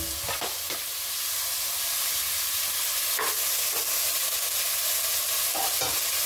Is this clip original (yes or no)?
yes